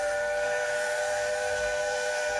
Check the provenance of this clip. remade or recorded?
remade